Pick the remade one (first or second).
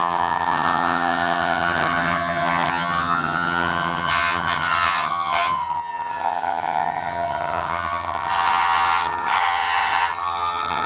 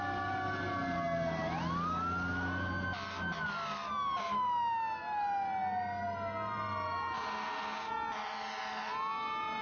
first